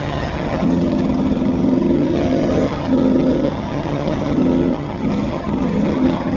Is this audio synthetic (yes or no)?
yes